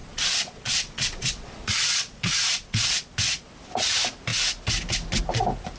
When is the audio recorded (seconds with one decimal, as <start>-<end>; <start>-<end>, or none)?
3.5-5.8

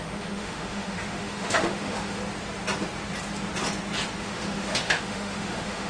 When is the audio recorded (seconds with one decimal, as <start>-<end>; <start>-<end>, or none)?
2.2-4.2

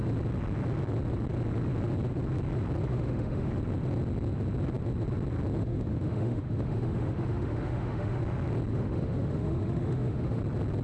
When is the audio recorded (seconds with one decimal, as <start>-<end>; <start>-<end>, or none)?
0.0-2.9; 3.5-5.6; 8.2-8.7; 10.4-10.8

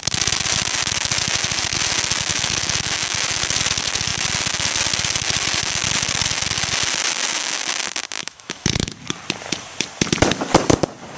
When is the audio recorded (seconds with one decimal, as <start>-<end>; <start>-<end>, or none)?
0.0-2.3; 3.4-8.2; 8.9-11.2